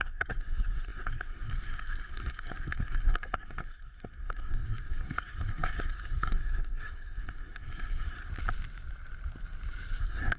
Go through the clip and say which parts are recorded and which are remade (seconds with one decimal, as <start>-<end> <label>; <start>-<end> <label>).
0.0-8.3 remade; 8.3-10.0 recorded; 10.0-10.4 remade